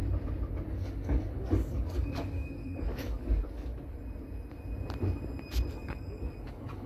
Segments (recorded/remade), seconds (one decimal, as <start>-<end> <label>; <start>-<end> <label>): 0.0-0.7 recorded; 0.7-3.7 remade; 3.7-5.7 recorded; 5.7-6.9 remade

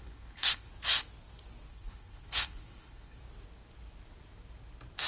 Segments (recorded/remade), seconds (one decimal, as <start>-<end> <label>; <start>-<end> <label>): 0.0-0.7 remade; 0.7-1.7 recorded; 1.7-3.2 remade; 3.2-5.1 recorded

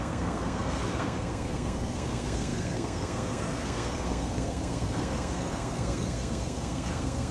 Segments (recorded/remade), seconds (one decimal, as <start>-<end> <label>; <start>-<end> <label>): 0.0-7.3 remade

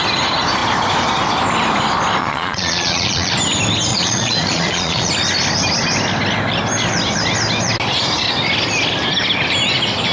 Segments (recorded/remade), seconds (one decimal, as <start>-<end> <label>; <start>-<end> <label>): 0.0-2.2 recorded; 2.2-3.3 remade; 3.3-3.9 recorded; 3.9-5.1 remade; 5.1-10.1 recorded

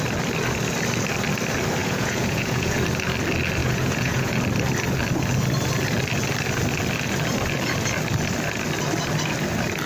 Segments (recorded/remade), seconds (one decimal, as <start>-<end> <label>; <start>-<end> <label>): 0.0-1.8 recorded; 1.8-2.7 remade; 2.7-3.6 recorded; 3.6-4.3 remade; 4.3-9.9 recorded

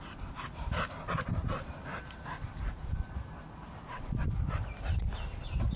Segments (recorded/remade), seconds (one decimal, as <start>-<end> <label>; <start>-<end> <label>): 0.0-1.4 recorded; 1.4-4.9 remade; 4.9-5.8 recorded